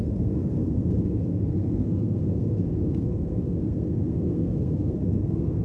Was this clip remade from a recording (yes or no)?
yes